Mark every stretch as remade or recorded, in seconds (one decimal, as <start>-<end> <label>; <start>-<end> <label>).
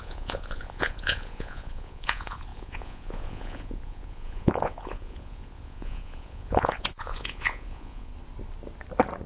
0.0-8.1 remade; 8.1-9.3 recorded